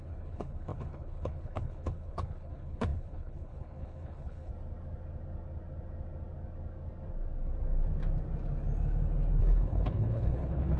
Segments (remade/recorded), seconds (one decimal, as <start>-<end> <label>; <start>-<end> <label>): 0.0-4.5 remade; 4.5-9.4 recorded; 9.4-10.8 remade